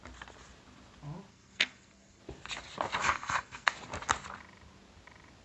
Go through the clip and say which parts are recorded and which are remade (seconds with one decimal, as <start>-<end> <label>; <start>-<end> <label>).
0.0-1.3 recorded; 1.3-2.2 remade; 2.2-3.0 recorded; 3.0-3.7 remade; 3.7-5.4 recorded